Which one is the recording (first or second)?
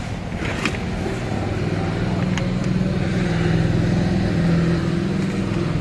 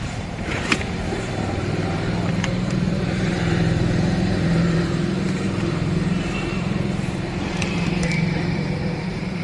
first